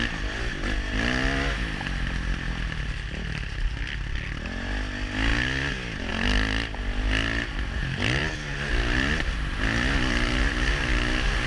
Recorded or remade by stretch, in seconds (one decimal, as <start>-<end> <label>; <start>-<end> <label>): 0.0-11.5 recorded